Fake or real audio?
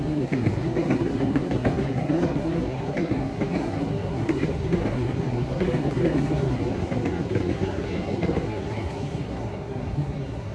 fake